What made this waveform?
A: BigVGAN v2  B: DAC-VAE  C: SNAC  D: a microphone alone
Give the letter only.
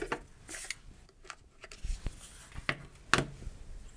D